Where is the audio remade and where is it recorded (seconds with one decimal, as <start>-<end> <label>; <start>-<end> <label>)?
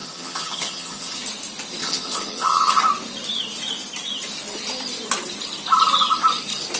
0.0-1.2 remade; 1.2-1.8 recorded; 1.8-2.8 remade; 2.8-6.8 recorded